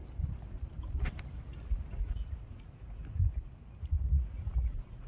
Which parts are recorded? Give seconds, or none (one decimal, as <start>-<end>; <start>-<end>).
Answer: 0.0-2.0; 3.2-3.8

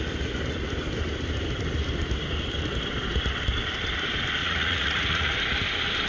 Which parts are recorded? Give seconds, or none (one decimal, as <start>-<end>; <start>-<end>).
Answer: 0.0-4.4; 5.4-6.1